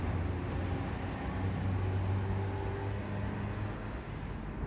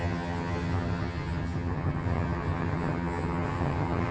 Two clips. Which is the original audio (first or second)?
first